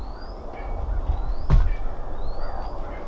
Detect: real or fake real